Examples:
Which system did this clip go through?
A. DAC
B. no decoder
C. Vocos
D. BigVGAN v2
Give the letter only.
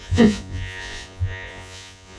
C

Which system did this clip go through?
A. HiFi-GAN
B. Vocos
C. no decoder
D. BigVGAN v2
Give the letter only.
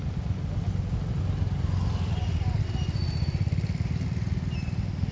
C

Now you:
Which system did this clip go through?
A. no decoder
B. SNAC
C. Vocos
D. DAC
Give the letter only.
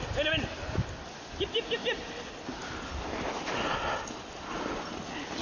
A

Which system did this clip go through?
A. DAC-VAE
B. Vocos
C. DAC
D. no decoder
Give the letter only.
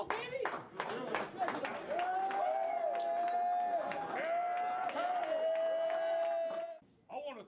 D